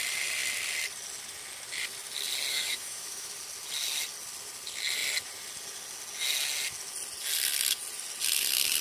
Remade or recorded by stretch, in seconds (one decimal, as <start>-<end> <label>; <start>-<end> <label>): 0.0-2.5 recorded; 2.5-3.3 remade; 3.3-8.8 recorded